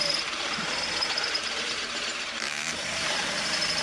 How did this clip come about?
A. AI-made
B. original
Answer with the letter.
A